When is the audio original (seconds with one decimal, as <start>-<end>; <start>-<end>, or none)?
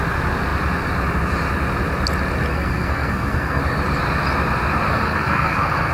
0.0-2.5; 3.6-4.9